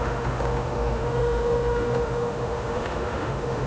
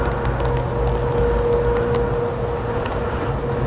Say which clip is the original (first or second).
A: second